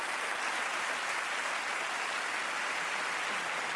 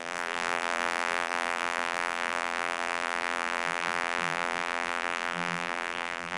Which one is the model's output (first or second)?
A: second